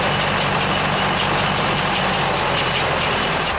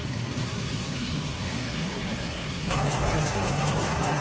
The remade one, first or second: second